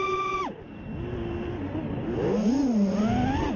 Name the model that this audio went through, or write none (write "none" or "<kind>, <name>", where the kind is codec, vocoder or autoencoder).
none